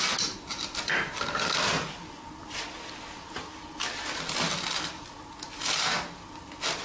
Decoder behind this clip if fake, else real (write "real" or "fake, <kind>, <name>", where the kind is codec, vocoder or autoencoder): real